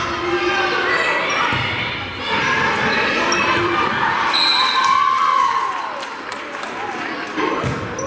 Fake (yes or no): yes